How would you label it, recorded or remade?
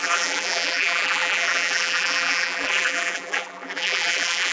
remade